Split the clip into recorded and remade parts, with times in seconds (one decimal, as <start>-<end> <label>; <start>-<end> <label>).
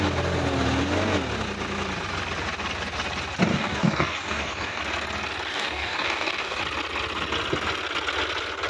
0.0-3.5 recorded; 3.5-4.8 remade; 4.8-5.5 recorded; 5.5-6.6 remade; 6.6-8.7 recorded